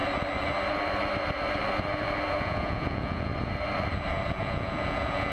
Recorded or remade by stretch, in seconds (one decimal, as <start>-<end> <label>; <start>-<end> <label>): 0.0-2.3 recorded; 2.3-3.3 remade; 3.3-4.3 recorded; 4.3-5.3 remade